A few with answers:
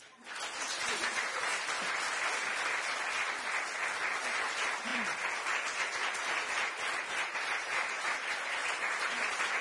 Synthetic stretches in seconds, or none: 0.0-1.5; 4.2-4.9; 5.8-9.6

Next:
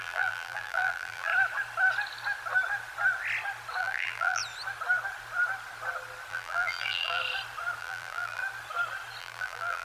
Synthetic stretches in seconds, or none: 0.0-1.3; 3.8-4.4; 6.3-7.2; 7.8-8.4; 9.2-9.8

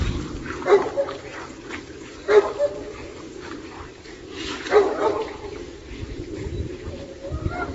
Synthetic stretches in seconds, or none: 0.0-7.7